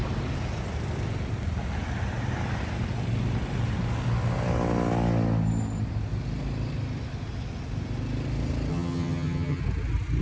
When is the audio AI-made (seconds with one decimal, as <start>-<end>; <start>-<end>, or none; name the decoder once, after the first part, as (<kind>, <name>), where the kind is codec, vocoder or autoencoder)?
8.7-9.6 (vocoder, HiFi-GAN)